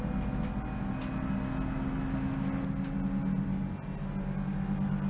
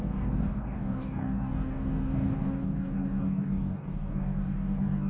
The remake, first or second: second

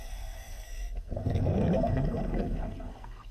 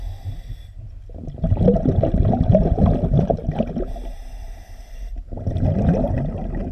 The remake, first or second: first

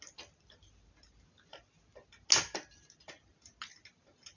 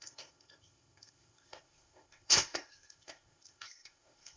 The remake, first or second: second